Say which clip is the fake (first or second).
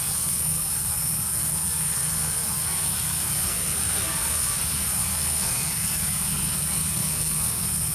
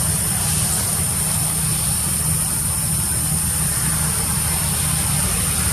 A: first